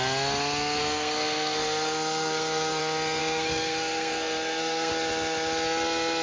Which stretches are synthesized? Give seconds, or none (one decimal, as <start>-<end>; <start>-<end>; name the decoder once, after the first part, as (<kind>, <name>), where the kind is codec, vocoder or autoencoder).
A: 0.8-2.8 (codec, SNAC); 3.2-4.9